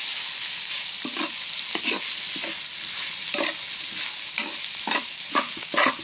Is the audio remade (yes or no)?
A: no